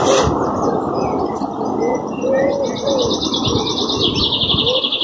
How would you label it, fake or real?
real